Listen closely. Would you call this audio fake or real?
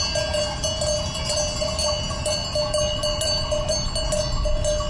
real